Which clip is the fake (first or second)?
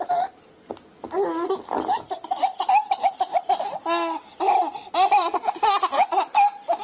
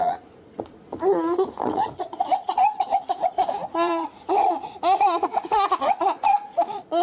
second